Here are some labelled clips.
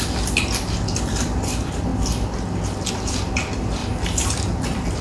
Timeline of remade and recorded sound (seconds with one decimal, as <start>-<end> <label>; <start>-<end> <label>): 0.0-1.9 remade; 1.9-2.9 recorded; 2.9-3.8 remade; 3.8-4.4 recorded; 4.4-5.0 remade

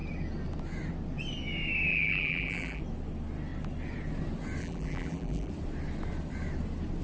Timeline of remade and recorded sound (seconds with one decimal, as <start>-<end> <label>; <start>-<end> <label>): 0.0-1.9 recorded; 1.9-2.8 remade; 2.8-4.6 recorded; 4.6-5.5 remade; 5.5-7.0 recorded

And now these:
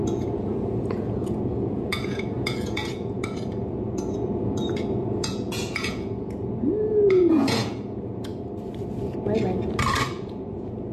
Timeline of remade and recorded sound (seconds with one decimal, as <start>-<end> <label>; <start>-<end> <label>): 0.0-8.3 remade; 8.3-10.1 recorded; 10.1-10.9 remade

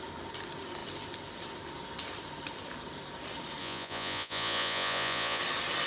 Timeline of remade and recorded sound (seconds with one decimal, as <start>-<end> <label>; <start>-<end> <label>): 0.0-3.6 recorded; 3.6-5.4 remade; 5.4-5.9 recorded